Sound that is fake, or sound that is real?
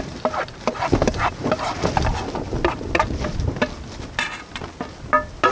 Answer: real